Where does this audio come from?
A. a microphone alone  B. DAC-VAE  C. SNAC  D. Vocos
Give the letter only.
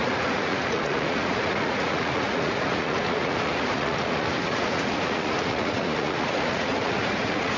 D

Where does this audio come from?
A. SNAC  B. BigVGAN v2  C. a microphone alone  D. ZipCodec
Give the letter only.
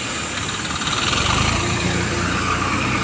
C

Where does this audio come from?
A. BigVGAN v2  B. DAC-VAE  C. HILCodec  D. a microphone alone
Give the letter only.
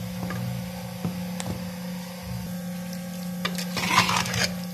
D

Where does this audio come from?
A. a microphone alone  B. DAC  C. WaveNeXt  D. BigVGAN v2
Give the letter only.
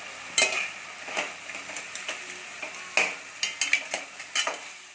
A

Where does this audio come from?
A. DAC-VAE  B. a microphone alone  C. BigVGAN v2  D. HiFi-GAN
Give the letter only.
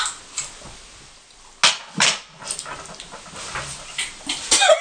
B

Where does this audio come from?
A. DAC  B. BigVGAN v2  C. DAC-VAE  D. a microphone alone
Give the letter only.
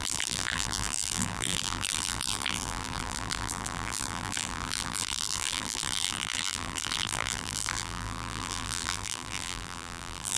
B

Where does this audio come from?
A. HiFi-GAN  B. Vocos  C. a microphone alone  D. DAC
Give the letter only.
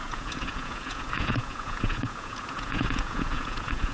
B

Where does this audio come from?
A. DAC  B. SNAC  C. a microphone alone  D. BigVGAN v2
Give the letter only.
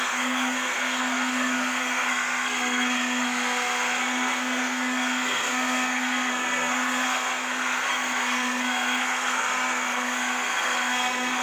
B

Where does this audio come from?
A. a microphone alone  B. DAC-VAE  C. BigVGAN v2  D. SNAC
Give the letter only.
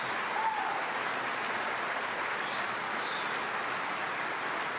A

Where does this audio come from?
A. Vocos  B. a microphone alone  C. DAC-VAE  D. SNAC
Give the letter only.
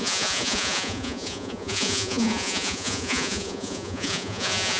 A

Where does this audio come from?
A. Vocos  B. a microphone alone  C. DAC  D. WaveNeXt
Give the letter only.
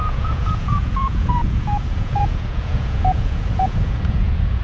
A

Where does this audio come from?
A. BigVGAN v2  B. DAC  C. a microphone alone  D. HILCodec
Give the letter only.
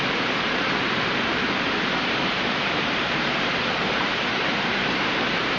A